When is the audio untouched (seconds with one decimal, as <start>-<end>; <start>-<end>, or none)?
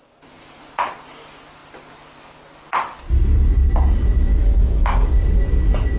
0.0-4.3; 5.1-6.0